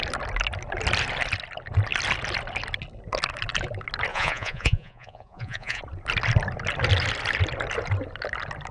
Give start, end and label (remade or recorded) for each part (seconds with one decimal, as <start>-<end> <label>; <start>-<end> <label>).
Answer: 0.0-4.1 recorded; 4.1-5.8 remade; 5.8-8.7 recorded